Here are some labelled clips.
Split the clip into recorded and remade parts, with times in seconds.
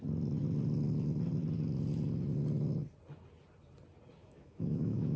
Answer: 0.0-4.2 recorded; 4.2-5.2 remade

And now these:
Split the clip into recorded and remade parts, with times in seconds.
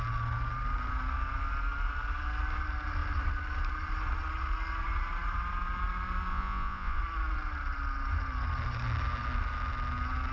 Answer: 0.0-6.3 recorded; 6.3-7.0 remade; 7.0-10.3 recorded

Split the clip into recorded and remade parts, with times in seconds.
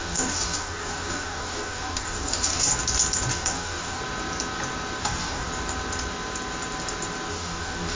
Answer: 0.0-2.7 remade; 2.7-3.3 recorded; 3.3-4.0 remade; 4.0-5.0 recorded; 5.0-5.5 remade; 5.5-7.3 recorded; 7.3-7.9 remade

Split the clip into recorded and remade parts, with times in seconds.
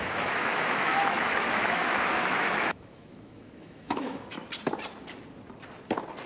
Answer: 0.0-4.4 remade; 4.4-6.3 recorded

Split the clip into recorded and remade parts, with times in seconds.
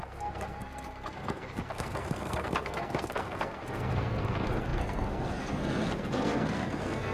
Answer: 0.0-7.1 remade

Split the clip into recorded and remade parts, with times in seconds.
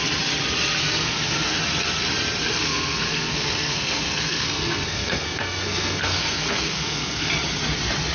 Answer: 0.0-0.8 recorded; 0.8-1.6 remade; 1.6-2.5 recorded; 2.5-7.3 remade; 7.3-8.1 recorded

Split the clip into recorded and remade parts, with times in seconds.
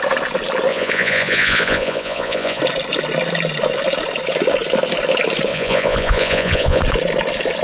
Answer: 0.0-0.7 recorded; 0.7-2.6 remade; 2.6-5.5 recorded; 5.5-6.8 remade; 6.8-7.6 recorded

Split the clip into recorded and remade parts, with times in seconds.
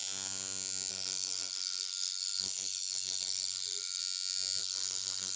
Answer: 0.0-0.9 recorded; 0.9-4.0 remade; 4.0-4.6 recorded; 4.6-5.4 remade